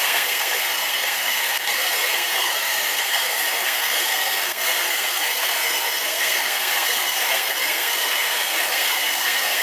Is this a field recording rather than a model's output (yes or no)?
no